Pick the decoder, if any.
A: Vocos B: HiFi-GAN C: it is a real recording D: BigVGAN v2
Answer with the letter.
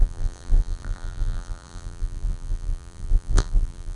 D